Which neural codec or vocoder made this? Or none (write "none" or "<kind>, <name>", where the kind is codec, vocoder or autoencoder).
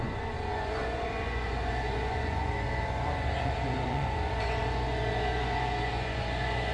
vocoder, Vocos